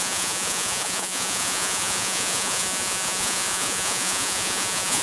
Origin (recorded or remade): remade